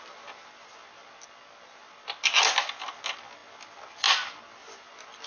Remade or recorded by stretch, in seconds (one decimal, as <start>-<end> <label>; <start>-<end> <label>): 0.0-5.3 recorded